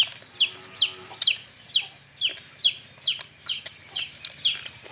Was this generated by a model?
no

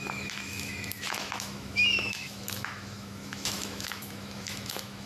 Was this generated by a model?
yes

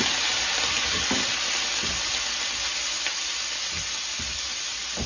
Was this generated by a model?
no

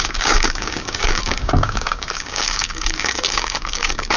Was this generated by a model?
yes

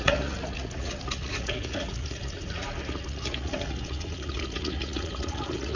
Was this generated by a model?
yes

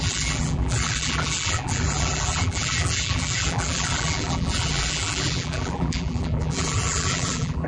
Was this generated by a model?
yes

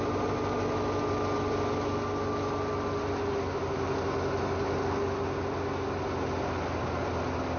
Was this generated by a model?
no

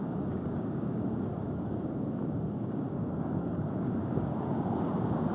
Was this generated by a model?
yes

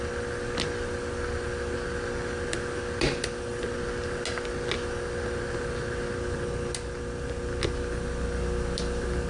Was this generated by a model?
no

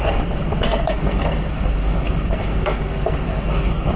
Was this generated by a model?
yes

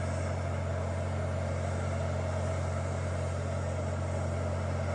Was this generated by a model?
no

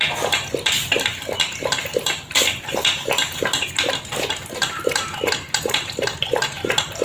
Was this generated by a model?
no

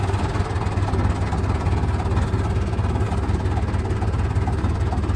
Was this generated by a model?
no